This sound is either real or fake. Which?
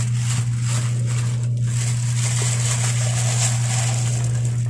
real